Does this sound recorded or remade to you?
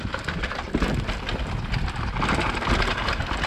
recorded